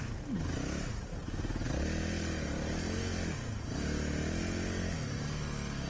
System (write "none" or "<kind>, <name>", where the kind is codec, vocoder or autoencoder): none